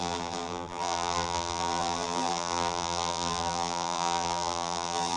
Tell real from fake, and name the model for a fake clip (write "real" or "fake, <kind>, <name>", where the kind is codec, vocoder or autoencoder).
fake, vocoder, BigVGAN v2